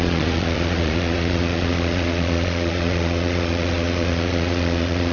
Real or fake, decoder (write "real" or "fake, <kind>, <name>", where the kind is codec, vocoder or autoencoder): fake, vocoder, Vocos